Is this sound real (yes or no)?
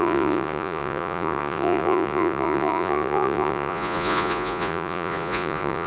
no